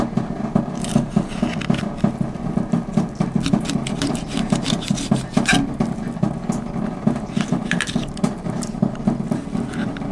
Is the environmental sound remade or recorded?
remade